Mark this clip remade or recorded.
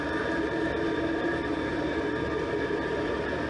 remade